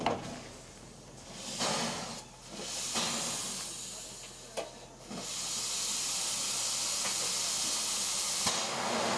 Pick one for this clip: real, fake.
real